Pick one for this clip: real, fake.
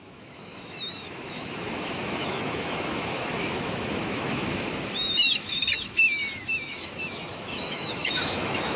fake